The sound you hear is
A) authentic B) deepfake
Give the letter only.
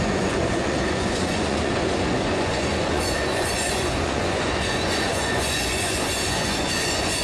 B